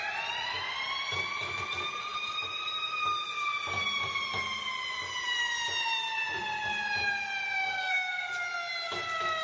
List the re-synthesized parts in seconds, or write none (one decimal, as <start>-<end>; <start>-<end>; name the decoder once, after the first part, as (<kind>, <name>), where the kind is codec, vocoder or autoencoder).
7.6-8.3 (codec, SNAC)